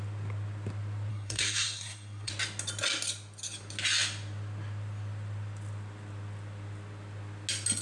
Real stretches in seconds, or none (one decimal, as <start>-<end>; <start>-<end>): 0.0-1.1; 2.3-7.8